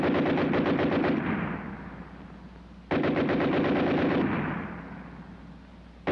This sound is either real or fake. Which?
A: real